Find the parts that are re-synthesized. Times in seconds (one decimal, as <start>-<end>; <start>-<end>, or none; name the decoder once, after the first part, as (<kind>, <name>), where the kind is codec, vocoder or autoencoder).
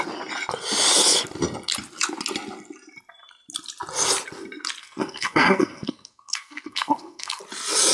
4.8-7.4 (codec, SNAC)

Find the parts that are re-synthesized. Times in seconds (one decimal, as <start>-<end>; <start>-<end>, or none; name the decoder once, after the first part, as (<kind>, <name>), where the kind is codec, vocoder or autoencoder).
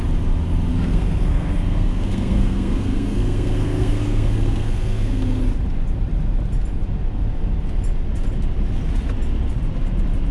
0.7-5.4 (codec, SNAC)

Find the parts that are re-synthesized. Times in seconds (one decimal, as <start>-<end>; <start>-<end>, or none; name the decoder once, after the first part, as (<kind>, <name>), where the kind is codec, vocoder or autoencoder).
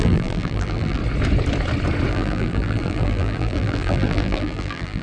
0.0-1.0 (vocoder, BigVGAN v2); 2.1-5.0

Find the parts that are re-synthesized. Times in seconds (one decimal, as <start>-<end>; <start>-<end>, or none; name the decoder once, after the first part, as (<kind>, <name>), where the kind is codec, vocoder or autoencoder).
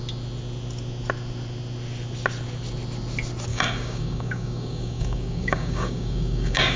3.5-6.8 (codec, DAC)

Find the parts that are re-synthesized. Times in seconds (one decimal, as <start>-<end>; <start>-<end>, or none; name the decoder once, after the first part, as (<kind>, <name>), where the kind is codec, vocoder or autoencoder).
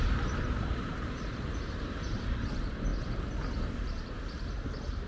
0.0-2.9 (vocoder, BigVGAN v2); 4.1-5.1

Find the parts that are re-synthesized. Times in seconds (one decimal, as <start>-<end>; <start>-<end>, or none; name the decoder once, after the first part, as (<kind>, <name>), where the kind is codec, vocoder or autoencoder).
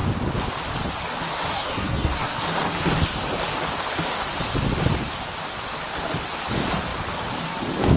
1.5-2.4 (codec, SNAC)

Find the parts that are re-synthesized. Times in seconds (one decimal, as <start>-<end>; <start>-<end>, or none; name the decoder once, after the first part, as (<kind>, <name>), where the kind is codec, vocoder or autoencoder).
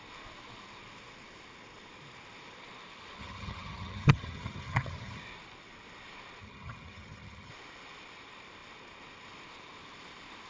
3.2-5.2 (vocoder, HiFi-GAN); 6.4-7.5